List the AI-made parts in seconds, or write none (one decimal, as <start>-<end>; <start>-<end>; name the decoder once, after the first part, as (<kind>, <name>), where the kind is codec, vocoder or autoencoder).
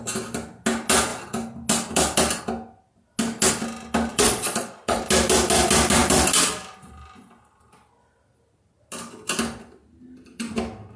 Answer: 4.1-5.0 (vocoder, Vocos)